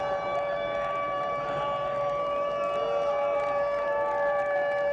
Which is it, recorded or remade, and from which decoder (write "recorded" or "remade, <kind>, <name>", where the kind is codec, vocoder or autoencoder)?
recorded